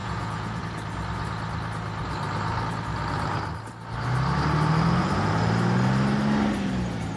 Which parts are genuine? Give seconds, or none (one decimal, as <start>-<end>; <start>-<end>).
0.6-7.2